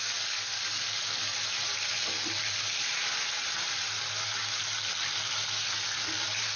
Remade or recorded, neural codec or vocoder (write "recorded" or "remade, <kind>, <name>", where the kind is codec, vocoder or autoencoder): recorded